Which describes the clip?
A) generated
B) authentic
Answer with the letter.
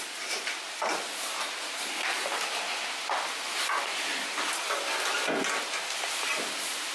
B